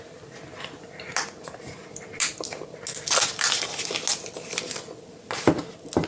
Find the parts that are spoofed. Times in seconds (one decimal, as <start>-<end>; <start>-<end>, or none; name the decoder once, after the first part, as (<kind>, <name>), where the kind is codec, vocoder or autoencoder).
none